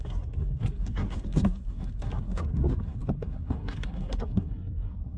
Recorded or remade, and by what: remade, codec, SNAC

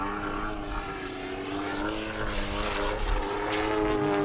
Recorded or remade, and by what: recorded